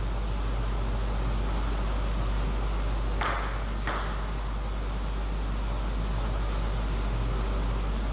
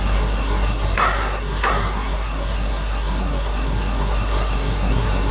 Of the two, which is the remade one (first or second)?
second